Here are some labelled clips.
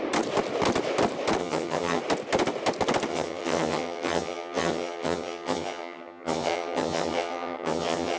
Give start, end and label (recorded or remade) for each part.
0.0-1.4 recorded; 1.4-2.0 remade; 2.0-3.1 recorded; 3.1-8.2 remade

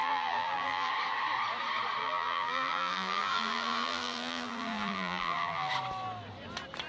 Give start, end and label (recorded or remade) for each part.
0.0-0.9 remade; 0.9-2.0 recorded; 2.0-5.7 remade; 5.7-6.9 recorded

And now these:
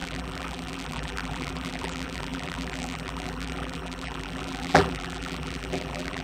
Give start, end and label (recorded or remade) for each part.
0.0-6.2 remade